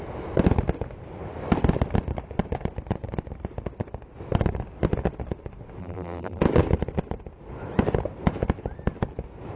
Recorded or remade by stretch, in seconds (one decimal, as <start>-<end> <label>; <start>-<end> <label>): 0.0-5.8 recorded; 5.8-6.4 remade; 6.4-9.6 recorded